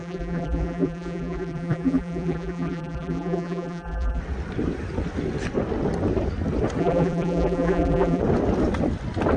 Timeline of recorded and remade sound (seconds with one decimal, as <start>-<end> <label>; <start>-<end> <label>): 0.0-4.2 remade; 4.2-6.8 recorded; 6.8-8.2 remade; 8.2-9.4 recorded